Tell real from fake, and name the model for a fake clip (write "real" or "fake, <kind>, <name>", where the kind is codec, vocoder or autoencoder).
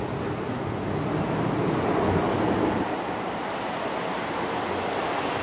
real